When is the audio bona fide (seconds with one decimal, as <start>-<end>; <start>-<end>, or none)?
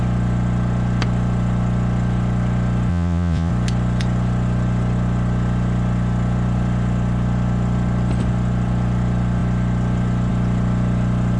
0.0-2.9; 3.5-11.4